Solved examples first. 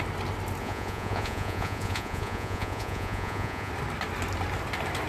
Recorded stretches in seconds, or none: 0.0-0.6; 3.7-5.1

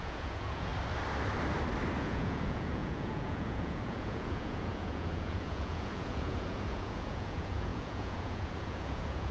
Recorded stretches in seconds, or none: 0.7-2.0

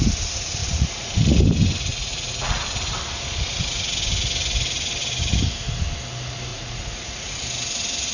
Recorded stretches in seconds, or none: 0.0-0.6; 1.4-1.9; 2.7-6.5; 7.4-8.1

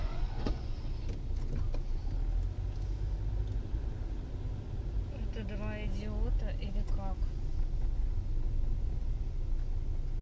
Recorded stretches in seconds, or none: 0.8-10.2

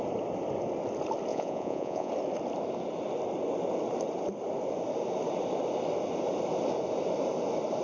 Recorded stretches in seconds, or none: 0.0-1.3; 2.1-7.8

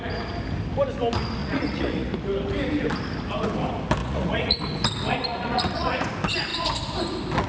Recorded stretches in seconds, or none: 0.0-1.4; 2.1-4.0; 4.6-5.3; 6.1-7.5

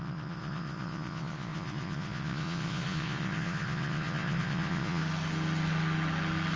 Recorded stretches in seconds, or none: 5.0-6.6

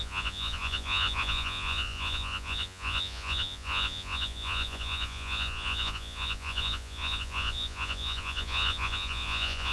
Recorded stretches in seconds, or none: none